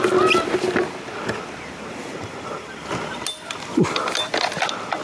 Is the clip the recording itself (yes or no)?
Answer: yes